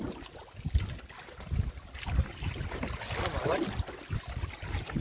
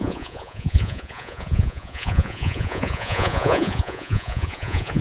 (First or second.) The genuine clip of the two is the first